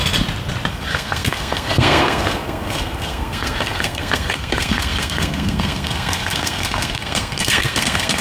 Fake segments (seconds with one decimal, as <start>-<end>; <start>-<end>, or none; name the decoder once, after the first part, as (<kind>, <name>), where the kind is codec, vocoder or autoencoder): 0.7-8.2 (codec, SNAC)